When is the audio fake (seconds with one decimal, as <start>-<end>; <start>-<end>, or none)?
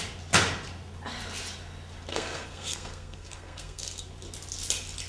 2.1-4.1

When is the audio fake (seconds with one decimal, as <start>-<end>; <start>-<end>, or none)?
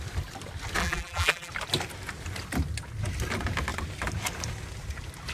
0.8-1.5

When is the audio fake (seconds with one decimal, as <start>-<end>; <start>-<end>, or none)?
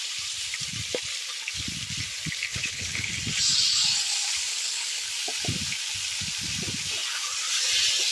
2.5-3.1; 4.5-5.1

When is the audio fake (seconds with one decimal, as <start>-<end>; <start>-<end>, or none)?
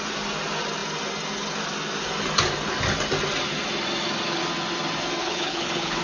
5.2-6.0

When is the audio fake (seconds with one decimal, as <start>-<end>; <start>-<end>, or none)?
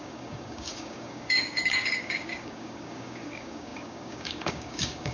0.0-5.1